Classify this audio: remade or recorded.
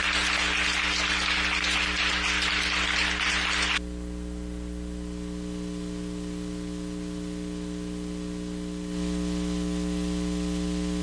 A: recorded